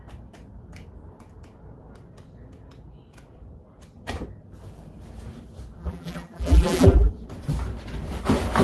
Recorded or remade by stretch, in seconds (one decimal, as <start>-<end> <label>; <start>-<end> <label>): 0.0-5.8 recorded; 5.8-7.1 remade; 7.1-8.6 recorded